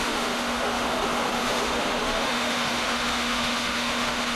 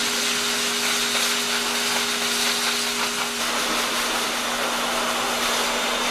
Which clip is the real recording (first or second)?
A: second